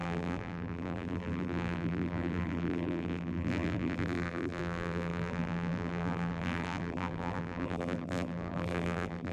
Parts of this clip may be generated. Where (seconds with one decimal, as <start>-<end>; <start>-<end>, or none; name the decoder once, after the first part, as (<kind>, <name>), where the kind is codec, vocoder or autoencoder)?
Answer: 0.0-9.3 (vocoder, BigVGAN v2)